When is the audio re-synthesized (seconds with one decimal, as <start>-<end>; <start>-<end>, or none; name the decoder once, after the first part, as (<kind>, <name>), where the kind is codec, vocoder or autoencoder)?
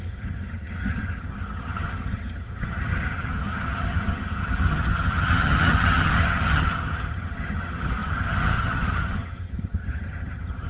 0.0-10.7 (vocoder, HiFi-GAN)